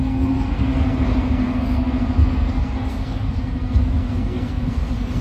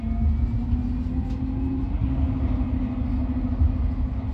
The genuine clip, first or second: second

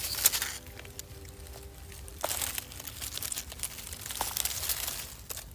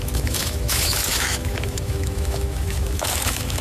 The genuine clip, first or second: first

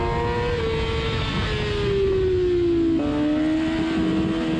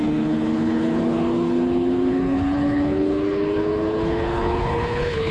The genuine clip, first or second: first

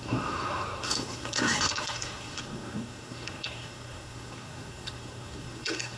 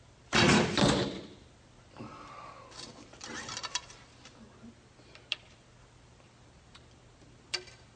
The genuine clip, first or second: second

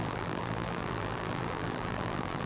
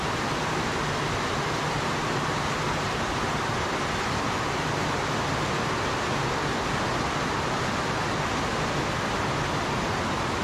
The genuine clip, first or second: second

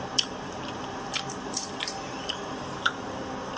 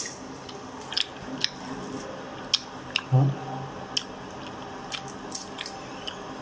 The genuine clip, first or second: second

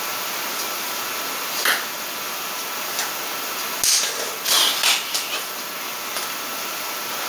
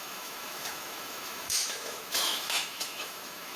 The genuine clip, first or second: first